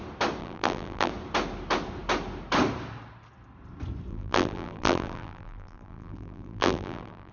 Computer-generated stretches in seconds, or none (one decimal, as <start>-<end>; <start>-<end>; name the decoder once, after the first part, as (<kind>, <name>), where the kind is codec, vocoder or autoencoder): 0.4-1.1 (vocoder, BigVGAN v2); 4.1-7.3